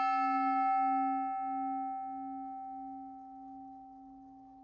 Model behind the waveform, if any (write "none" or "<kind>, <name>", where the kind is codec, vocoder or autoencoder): none